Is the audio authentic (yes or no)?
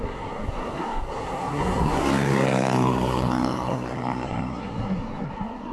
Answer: no